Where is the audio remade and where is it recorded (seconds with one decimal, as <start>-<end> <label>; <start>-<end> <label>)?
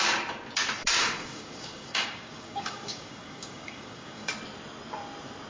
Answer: 0.0-1.0 recorded; 1.0-4.3 remade; 4.3-5.5 recorded